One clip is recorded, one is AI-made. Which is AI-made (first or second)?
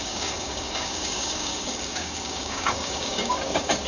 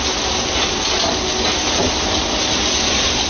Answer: first